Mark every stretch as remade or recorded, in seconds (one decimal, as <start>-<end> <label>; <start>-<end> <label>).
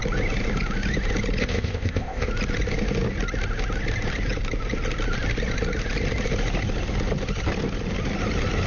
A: 0.0-1.4 recorded; 1.4-2.3 remade; 2.3-8.7 recorded